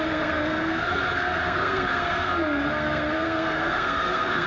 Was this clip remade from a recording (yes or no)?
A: yes